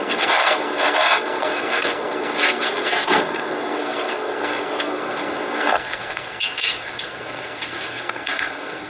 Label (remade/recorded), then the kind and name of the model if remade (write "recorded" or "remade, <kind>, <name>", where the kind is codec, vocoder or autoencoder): remade, codec, SNAC